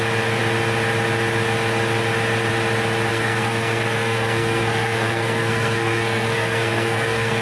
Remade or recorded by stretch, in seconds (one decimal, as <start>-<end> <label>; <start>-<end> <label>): 0.0-3.1 recorded; 3.1-7.4 remade